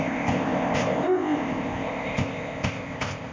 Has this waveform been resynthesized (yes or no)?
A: yes